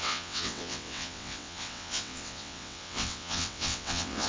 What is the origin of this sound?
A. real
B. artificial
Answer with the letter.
B